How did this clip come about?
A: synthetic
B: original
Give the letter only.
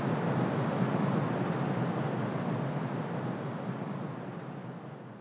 B